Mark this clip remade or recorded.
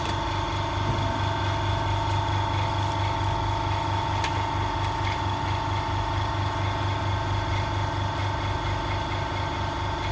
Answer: recorded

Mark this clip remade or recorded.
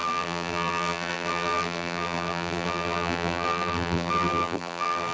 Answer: remade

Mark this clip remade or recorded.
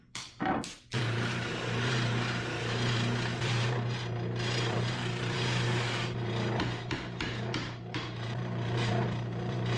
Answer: remade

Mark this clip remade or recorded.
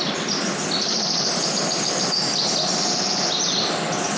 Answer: recorded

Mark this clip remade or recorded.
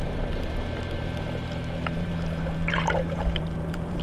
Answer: remade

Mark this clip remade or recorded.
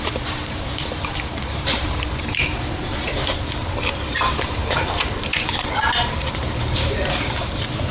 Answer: remade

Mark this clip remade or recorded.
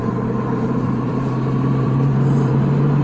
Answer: remade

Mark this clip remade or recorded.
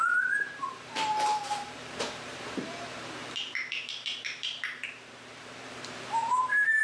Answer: remade